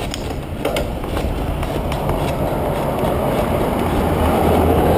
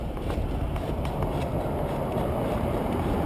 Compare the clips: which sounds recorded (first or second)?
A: first